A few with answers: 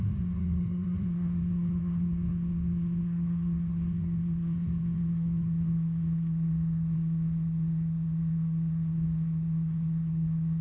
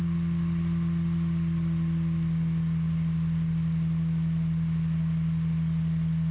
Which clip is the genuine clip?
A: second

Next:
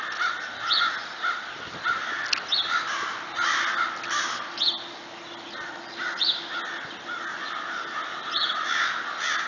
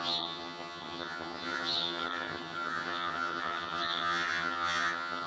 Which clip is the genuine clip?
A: first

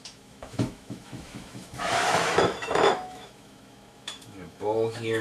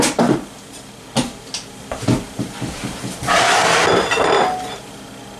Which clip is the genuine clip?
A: second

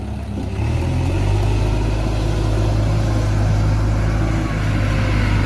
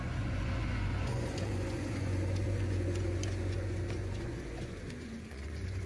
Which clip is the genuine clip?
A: first